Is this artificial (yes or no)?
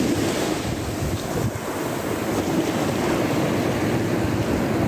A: no